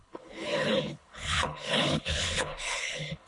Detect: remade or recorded remade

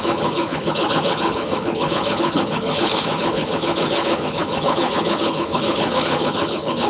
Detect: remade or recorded remade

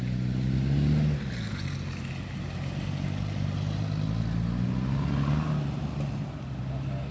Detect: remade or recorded recorded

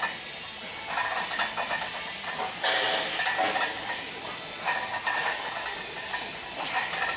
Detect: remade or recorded recorded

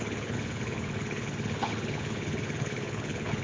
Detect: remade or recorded remade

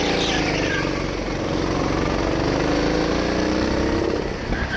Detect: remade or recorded recorded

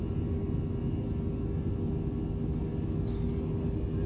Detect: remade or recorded recorded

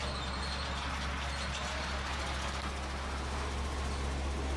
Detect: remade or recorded recorded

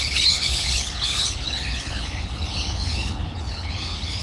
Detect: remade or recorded remade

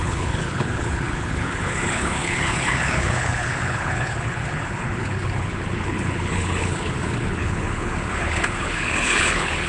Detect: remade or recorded remade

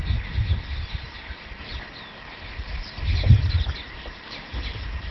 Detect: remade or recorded recorded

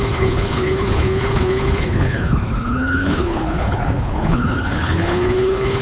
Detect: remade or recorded remade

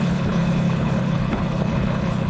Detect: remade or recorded remade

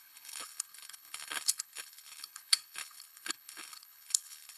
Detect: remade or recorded remade